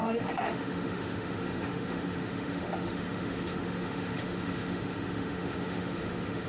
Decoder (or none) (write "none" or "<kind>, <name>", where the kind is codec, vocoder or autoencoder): autoencoder, DAC-VAE